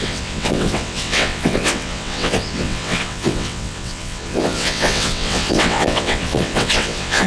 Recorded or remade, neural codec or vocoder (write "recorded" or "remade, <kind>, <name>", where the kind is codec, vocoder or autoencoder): remade, vocoder, WaveNeXt